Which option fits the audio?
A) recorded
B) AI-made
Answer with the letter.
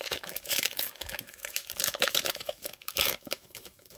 B